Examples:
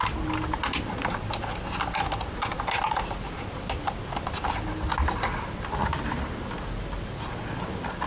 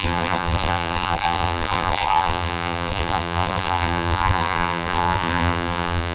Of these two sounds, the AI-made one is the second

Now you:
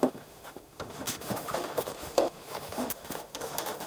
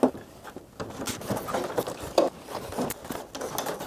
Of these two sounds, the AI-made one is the first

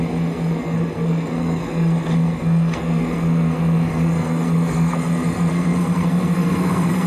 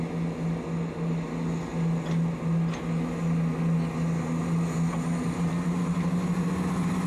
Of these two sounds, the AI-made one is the first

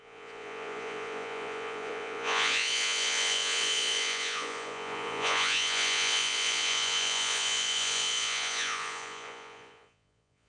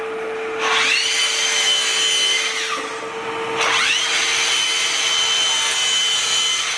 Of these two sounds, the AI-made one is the first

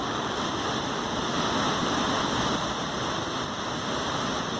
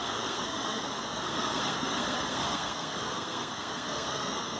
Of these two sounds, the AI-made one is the second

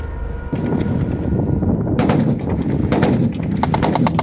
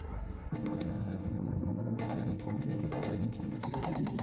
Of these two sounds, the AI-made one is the second